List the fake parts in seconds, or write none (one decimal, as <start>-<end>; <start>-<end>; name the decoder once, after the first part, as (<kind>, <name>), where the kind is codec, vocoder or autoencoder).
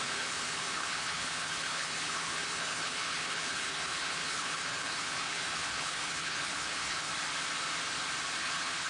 0.0-7.1 (codec, HILCodec); 8.4-8.9